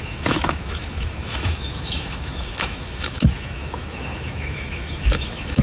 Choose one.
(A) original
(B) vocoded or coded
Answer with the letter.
B